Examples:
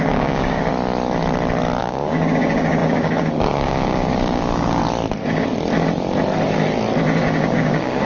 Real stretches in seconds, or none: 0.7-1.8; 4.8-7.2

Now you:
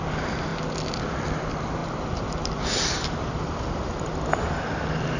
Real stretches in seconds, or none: 0.0-5.2

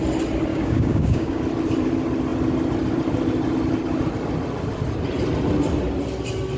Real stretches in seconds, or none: 0.0-0.5; 1.4-6.6

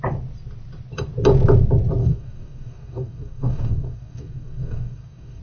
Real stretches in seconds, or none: 0.0-2.0